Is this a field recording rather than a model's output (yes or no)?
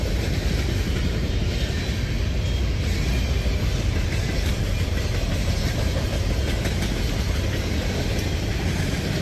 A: yes